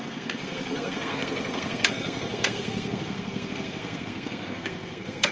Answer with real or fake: fake